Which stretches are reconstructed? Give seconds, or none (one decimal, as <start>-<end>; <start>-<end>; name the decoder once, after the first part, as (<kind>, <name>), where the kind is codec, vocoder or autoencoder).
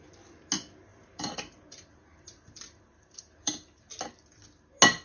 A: 0.9-3.9 (vocoder, BigVGAN v2)